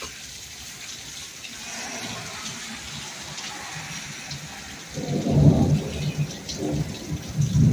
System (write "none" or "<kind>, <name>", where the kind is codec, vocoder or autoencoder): none